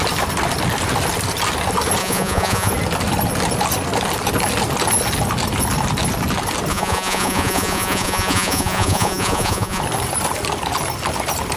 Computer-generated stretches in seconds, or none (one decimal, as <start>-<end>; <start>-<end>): 2.0-2.7; 6.7-9.8